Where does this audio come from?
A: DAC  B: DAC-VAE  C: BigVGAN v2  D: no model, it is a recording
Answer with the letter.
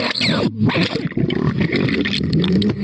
D